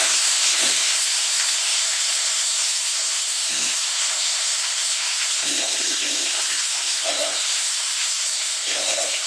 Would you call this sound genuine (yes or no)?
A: no